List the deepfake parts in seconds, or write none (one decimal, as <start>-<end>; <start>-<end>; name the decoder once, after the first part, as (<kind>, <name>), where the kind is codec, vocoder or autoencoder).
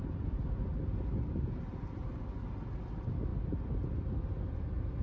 none